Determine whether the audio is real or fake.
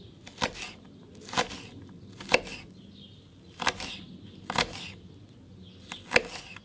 real